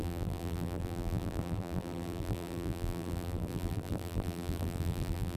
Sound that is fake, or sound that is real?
fake